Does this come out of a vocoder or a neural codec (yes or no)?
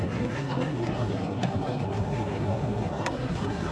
yes